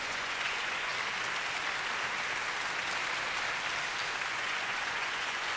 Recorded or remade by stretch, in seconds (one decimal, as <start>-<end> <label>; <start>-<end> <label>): 0.0-0.9 remade; 0.9-4.3 recorded; 4.3-5.6 remade